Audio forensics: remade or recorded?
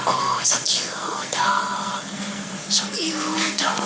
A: remade